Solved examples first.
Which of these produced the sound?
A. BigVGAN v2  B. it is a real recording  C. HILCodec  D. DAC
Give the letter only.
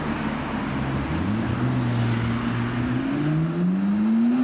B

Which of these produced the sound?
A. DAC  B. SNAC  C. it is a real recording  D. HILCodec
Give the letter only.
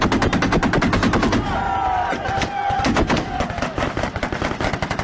C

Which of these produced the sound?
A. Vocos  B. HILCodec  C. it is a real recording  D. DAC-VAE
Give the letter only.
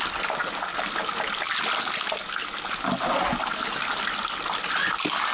C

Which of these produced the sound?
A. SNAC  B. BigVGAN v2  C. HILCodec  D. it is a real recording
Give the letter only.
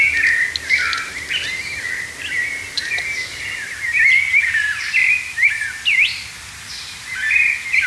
D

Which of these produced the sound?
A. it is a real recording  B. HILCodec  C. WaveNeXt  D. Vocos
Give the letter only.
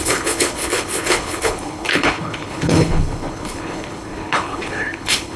B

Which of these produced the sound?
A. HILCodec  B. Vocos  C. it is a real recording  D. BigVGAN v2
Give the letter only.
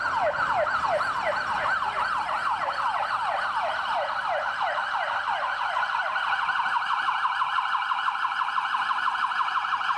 C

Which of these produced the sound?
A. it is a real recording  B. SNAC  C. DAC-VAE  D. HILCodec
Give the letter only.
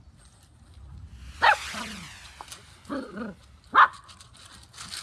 A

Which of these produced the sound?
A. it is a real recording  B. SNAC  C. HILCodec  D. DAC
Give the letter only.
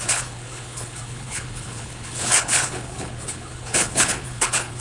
C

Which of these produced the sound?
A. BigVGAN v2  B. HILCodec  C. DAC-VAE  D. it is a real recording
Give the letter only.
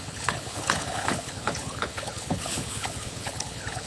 B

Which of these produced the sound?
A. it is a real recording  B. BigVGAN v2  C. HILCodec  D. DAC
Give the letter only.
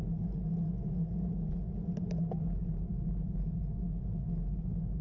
A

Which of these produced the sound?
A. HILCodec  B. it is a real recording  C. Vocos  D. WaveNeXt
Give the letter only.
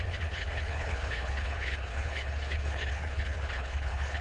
A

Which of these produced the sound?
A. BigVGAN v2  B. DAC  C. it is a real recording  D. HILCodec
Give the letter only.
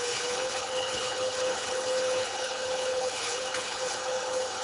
D